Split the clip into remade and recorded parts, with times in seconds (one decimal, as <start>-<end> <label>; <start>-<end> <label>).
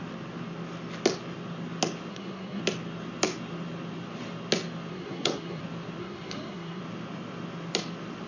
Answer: 0.0-2.1 recorded; 2.1-2.6 remade; 2.6-4.9 recorded; 4.9-5.6 remade; 5.6-6.0 recorded; 6.0-6.8 remade; 6.8-8.3 recorded